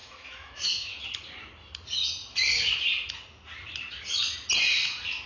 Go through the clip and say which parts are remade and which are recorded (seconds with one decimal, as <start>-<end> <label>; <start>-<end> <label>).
0.0-1.0 remade; 1.0-5.3 recorded